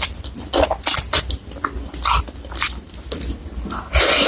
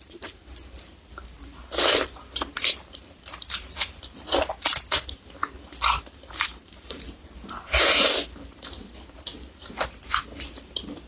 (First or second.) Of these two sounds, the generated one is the second